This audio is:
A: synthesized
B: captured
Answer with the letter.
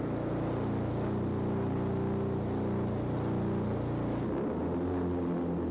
B